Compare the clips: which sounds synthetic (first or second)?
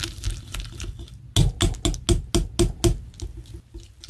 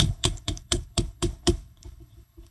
second